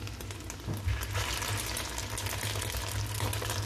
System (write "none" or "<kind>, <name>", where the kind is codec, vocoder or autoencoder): none